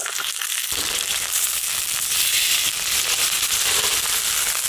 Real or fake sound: real